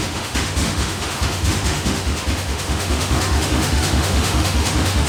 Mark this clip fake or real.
fake